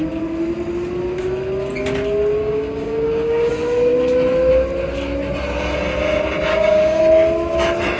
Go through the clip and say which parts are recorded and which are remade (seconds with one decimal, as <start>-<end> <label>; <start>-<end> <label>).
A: 0.0-2.4 recorded; 2.4-3.5 remade; 3.5-6.5 recorded; 6.5-7.0 remade; 7.0-8.0 recorded